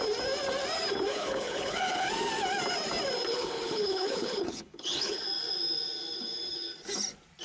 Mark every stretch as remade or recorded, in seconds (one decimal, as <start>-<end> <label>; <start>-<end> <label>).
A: 0.0-1.1 recorded; 1.1-2.1 remade; 2.1-3.3 recorded; 3.3-5.2 remade; 5.2-7.4 recorded